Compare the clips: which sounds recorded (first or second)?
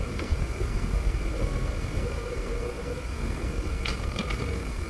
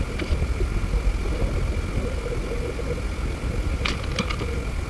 second